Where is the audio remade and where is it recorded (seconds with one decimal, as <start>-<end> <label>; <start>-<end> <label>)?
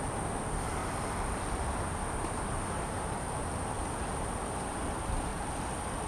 0.0-0.8 recorded; 0.8-4.5 remade; 4.5-5.3 recorded; 5.3-6.1 remade